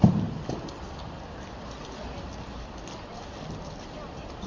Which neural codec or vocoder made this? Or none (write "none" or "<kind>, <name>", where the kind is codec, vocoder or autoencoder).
none